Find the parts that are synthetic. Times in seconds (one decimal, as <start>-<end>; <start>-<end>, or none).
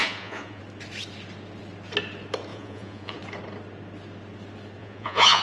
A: 0.0-0.6; 2.5-3.2; 4.8-5.4